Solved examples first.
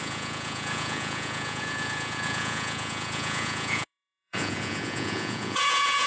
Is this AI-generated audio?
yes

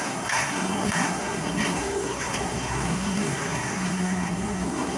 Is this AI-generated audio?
yes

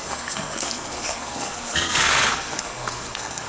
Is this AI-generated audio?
yes